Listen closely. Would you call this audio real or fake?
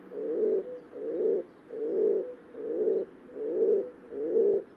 real